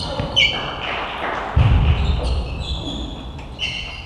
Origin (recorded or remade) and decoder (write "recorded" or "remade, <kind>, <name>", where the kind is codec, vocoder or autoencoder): recorded